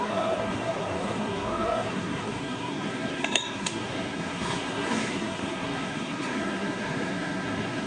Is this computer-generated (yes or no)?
yes